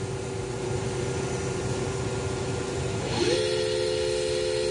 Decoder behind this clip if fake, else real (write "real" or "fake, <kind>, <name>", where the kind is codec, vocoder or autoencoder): real